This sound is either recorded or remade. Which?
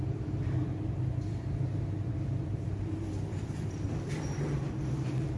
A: remade